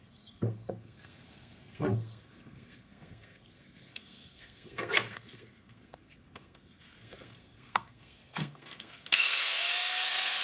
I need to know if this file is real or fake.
fake